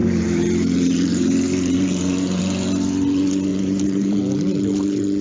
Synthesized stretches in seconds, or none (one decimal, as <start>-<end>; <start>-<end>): 0.0-2.4; 3.5-4.2